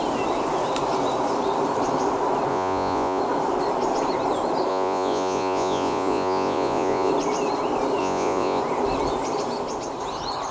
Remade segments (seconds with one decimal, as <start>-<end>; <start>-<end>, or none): 2.5-3.2; 4.7-7.1; 8.0-8.6